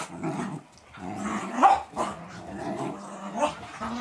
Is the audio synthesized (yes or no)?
no